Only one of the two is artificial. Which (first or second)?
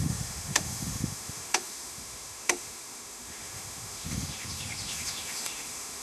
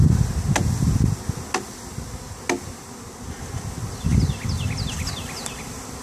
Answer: first